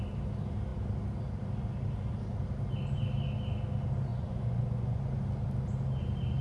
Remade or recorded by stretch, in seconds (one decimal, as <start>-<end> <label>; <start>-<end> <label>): 0.0-4.1 recorded; 4.1-5.0 remade; 5.0-6.4 recorded